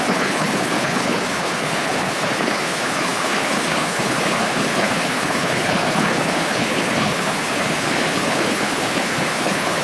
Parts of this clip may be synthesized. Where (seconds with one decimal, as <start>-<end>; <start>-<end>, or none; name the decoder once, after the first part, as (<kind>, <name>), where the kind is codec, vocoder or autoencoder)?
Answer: 0.0-9.8 (codec, HILCodec)